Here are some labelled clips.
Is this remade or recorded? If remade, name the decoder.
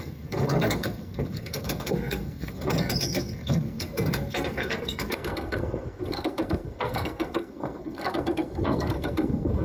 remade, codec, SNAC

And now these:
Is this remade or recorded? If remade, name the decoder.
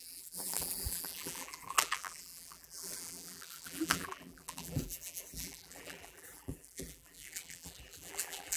remade, vocoder, BigVGAN v2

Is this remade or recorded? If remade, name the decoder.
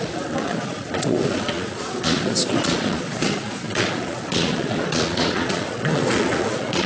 remade, vocoder, Vocos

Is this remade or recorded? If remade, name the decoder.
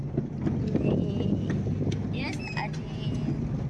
recorded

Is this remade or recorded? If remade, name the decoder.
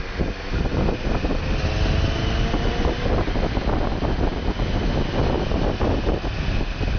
recorded